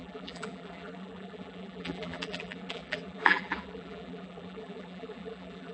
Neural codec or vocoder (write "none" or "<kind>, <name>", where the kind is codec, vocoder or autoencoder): vocoder, BigVGAN v2